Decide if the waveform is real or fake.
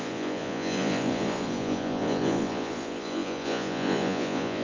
fake